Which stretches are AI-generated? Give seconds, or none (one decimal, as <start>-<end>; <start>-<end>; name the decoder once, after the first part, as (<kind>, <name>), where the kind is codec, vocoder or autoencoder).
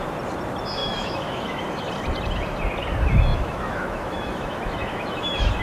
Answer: 0.8-1.9 (autoencoder, DAC-VAE); 3.3-5.6